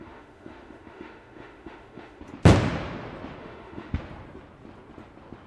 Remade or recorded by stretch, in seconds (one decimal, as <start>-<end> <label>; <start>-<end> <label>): 0.0-2.2 remade; 2.2-3.4 recorded; 3.4-3.9 remade; 3.9-5.5 recorded